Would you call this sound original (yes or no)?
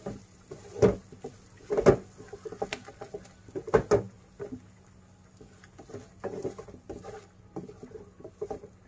yes